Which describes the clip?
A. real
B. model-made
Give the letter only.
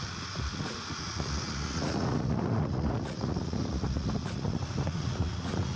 B